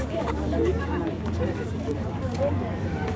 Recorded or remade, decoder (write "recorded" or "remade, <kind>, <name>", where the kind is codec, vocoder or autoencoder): remade, codec, DAC